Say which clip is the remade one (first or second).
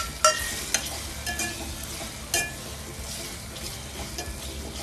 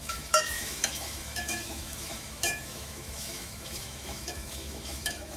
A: second